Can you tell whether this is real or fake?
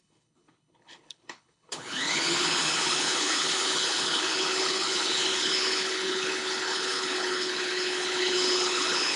fake